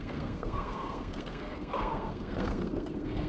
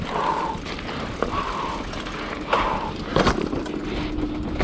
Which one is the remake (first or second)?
first